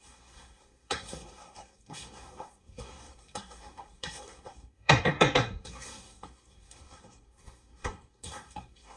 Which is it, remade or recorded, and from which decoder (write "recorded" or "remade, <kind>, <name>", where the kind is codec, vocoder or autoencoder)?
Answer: remade, codec, SNAC